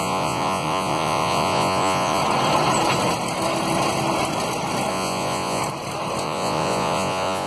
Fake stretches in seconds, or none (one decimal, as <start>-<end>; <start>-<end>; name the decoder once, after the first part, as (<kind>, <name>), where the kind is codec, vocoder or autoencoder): 0.0-2.2 (vocoder, Vocos); 4.9-5.6; 6.2-7.5